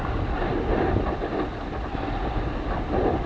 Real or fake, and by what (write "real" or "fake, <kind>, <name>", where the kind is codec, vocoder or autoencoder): real